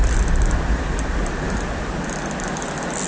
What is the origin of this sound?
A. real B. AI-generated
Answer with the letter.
A